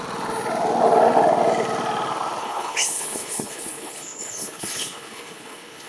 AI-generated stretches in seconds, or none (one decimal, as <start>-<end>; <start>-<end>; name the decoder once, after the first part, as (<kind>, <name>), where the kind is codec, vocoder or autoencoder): 2.4-5.9 (codec, HILCodec)